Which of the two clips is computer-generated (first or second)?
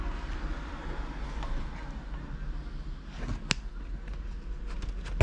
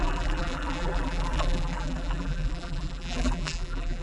second